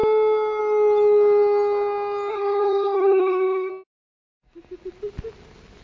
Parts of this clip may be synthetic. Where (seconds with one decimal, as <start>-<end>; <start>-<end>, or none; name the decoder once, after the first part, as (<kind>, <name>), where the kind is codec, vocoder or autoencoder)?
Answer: 2.3-3.7 (codec, SNAC)